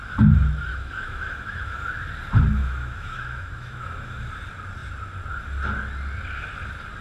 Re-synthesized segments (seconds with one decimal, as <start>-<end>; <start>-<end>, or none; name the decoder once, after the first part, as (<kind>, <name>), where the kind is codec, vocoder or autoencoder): 0.7-1.8 (autoencoder, DAC-VAE); 2.6-4.2